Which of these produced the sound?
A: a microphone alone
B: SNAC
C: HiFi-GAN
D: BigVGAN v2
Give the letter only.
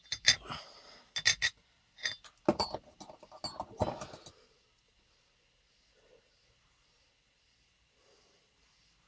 A